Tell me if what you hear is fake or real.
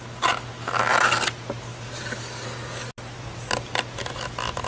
real